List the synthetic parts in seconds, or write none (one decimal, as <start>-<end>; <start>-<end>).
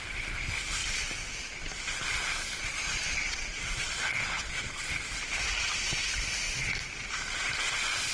2.6-4.8